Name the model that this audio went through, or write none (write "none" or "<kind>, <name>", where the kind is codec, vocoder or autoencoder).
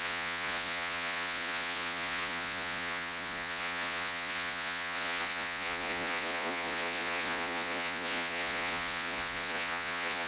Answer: vocoder, Vocos